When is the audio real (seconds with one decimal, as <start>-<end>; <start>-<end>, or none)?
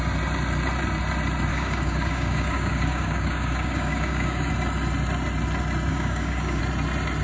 0.0-1.5; 4.5-5.9; 6.6-7.2